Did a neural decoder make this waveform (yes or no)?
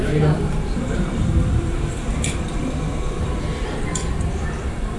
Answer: yes